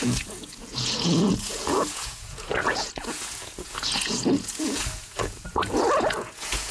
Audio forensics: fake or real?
fake